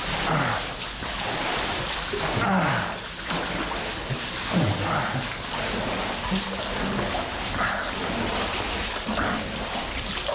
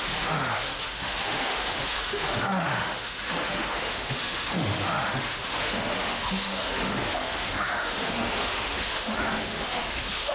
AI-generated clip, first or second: second